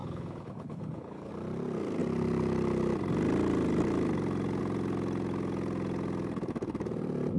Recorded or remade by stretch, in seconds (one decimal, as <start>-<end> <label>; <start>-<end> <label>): 0.0-1.3 remade; 1.3-7.4 recorded